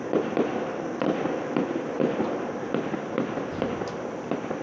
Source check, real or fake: fake